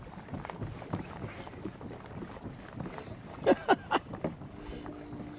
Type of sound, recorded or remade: recorded